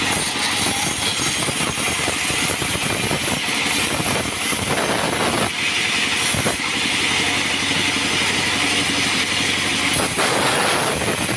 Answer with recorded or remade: recorded